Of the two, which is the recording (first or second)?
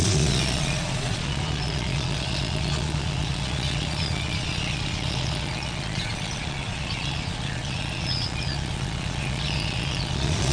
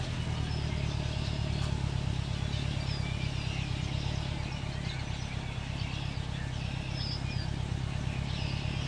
second